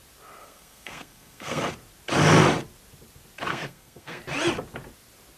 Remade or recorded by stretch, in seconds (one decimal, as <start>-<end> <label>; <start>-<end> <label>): 0.0-0.4 recorded; 0.4-1.6 remade; 1.6-3.5 recorded; 3.5-4.2 remade; 4.2-5.4 recorded